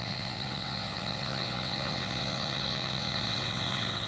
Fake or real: fake